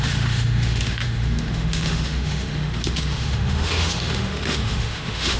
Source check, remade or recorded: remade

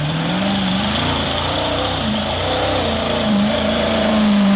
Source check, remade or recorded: remade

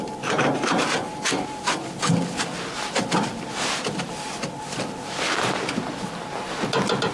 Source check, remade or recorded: recorded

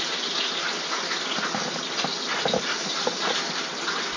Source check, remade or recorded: recorded